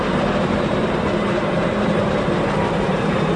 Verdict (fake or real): fake